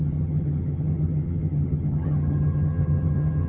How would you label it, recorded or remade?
remade